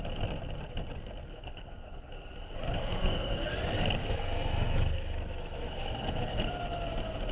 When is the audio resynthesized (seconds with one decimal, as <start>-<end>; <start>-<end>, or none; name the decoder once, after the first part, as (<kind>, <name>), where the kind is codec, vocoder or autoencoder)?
1.3-1.9 (codec, SNAC); 2.8-3.4; 4.0-6.5